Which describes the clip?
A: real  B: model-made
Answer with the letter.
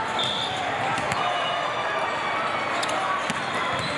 A